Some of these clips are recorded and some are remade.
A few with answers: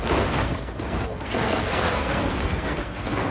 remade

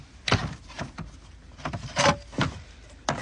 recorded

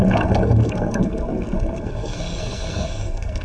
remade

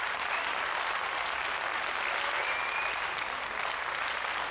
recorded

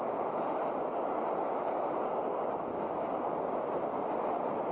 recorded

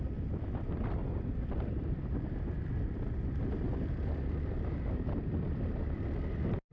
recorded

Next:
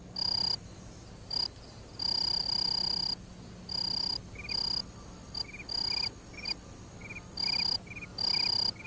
recorded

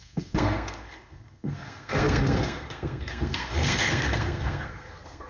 remade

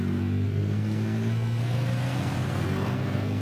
remade